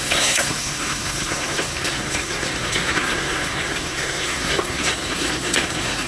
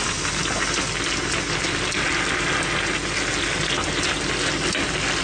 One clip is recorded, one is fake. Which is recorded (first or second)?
second